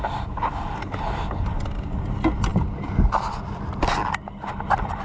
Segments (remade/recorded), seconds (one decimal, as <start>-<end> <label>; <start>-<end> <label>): 0.0-5.0 recorded